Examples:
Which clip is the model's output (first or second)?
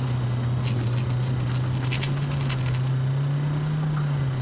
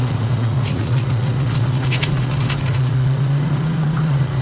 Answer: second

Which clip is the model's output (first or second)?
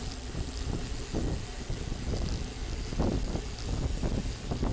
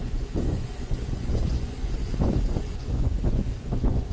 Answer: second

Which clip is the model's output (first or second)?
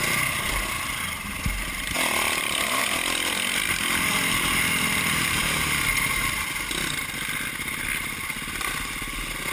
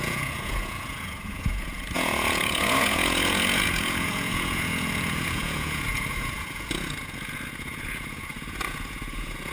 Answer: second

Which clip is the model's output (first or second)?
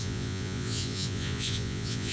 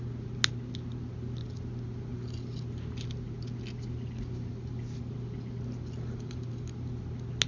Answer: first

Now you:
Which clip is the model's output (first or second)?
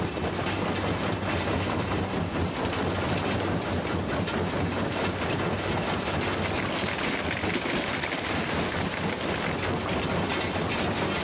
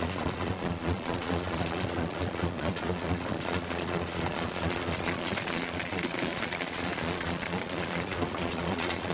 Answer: second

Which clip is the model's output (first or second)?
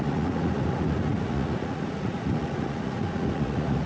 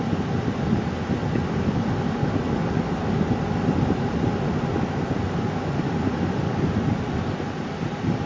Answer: first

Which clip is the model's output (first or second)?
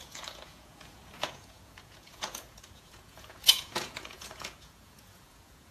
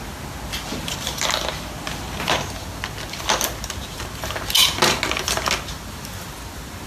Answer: first